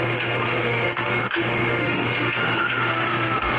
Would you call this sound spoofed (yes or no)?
yes